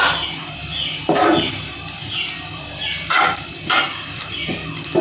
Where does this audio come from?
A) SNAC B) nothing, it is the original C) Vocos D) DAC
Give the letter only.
B